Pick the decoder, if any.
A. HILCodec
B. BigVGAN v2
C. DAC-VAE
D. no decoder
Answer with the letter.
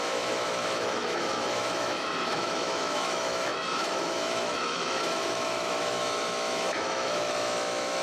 C